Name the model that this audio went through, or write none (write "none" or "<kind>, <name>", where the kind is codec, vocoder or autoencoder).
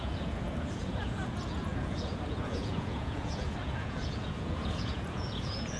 vocoder, Vocos